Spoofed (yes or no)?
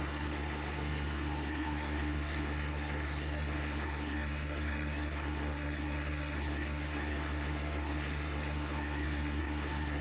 yes